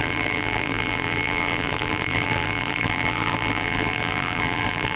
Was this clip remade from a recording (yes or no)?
yes